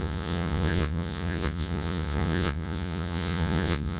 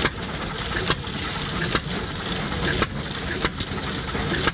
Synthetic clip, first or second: first